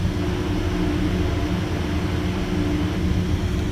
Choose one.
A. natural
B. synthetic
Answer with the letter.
A